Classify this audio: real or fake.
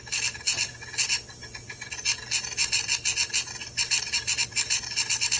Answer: real